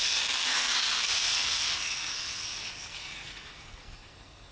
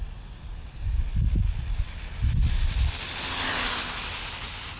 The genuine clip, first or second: second